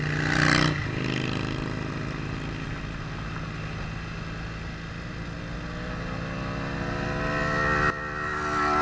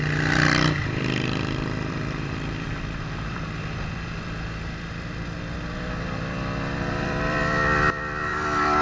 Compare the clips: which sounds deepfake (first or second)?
second